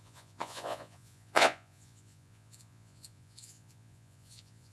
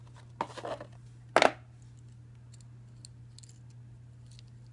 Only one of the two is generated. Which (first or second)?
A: first